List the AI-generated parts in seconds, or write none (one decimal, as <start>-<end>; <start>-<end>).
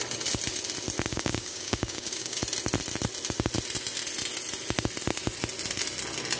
1.1-2.4